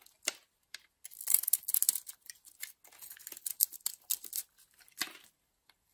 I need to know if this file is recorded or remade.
recorded